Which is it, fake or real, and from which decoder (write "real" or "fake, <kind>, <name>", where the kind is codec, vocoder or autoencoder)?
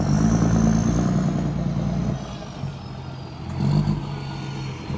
real